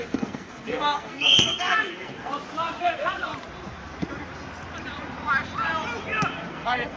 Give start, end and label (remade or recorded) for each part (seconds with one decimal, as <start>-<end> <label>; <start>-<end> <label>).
0.0-2.3 remade; 2.3-2.8 recorded; 2.8-3.3 remade; 3.3-6.5 recorded; 6.5-7.0 remade